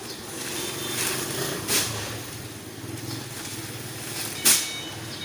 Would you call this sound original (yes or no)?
yes